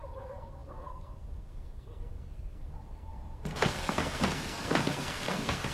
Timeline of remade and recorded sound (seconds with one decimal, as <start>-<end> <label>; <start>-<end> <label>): 0.0-5.7 remade